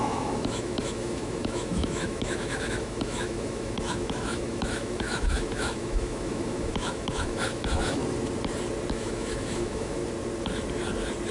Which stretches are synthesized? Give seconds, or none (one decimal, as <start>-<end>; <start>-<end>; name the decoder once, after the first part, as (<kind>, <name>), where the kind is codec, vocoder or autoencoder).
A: 0.0-8.0 (autoencoder, DAC-VAE); 8.9-10.0